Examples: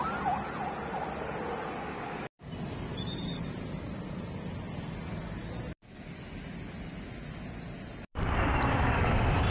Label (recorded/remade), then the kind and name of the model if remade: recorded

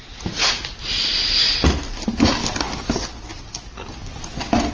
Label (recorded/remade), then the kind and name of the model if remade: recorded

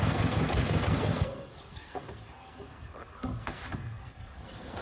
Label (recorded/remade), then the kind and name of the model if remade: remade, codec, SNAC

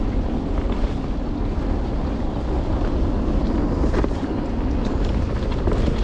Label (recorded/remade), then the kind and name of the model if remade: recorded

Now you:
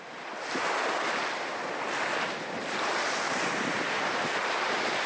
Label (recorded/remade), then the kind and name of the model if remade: recorded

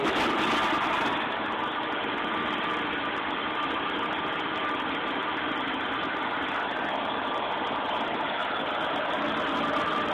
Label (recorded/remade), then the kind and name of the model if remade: recorded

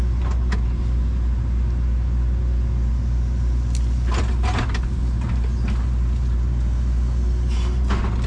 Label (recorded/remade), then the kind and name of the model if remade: recorded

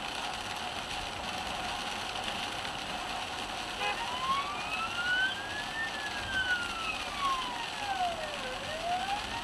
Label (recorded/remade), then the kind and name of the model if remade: recorded